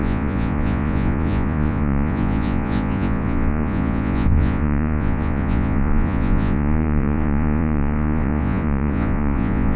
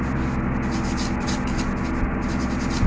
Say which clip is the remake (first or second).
first